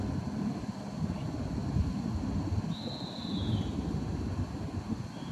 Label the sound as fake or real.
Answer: real